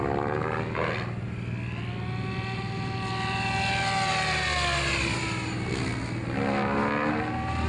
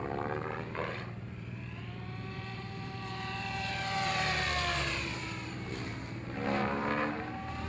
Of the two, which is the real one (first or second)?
first